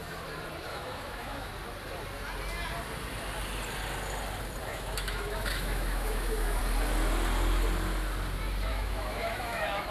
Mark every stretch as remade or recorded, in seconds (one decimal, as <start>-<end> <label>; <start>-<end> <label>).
0.0-0.7 recorded; 0.7-1.5 remade; 1.5-4.6 recorded; 4.6-6.6 remade; 6.6-8.7 recorded; 8.7-9.9 remade